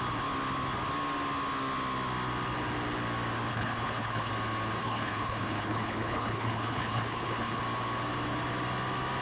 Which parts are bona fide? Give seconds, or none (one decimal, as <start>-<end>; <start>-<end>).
0.0-3.5; 4.3-4.8; 7.6-9.2